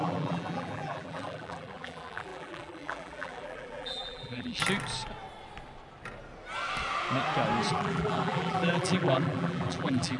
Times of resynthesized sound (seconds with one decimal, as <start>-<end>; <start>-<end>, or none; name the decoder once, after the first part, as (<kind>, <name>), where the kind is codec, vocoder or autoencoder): 0.0-4.6 (vocoder, BigVGAN v2); 7.7-10.2